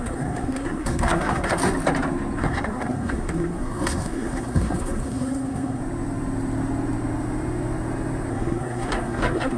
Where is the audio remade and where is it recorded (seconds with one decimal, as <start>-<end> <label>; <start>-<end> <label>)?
0.0-1.6 remade; 1.6-2.4 recorded; 2.4-5.8 remade; 5.8-8.3 recorded; 8.3-9.6 remade